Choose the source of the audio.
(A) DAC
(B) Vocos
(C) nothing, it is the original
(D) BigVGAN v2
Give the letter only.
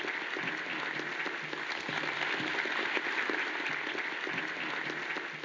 C